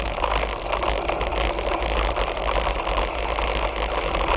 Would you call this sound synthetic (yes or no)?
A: no